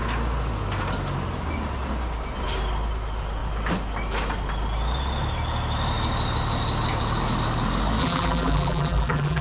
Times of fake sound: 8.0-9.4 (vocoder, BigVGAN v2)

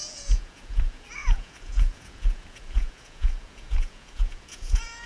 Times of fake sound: 0.0-5.1 (vocoder, Vocos)

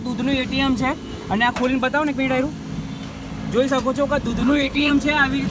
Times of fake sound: 4.4-4.9 (codec, HILCodec)

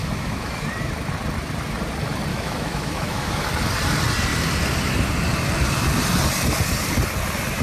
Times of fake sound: 0.0-0.6 (autoencoder, DAC-VAE); 2.3-3.5

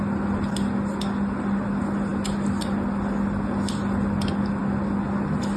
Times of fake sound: none

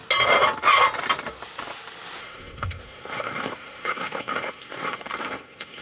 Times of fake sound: 2.2-5.8 (codec, SNAC)